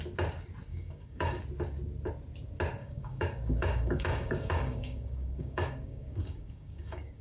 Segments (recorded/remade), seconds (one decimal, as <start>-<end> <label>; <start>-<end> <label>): 0.0-0.7 recorded; 0.7-1.4 remade; 1.4-2.8 recorded; 2.8-7.2 remade